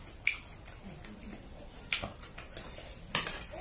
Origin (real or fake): real